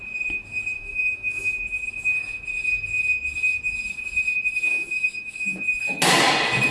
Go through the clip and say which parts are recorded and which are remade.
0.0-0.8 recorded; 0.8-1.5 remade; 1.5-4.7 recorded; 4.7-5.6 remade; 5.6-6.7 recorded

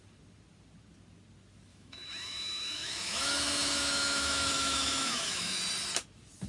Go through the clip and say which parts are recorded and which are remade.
0.0-1.7 recorded; 1.7-5.6 remade; 5.6-6.5 recorded

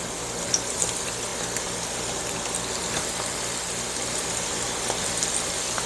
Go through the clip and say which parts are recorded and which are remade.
0.0-5.9 recorded